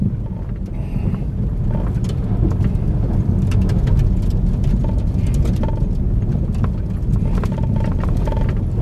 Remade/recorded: recorded